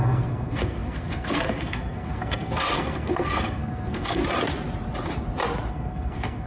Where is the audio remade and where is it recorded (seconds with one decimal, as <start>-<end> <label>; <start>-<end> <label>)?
0.0-4.2 remade; 4.2-5.7 recorded; 5.7-6.5 remade